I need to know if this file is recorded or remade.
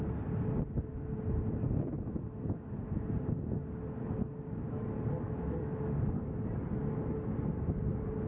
recorded